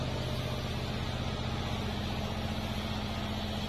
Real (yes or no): yes